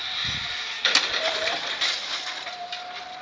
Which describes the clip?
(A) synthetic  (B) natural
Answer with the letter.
B